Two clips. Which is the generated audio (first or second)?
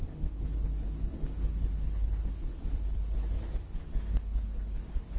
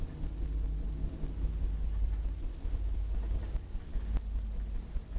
first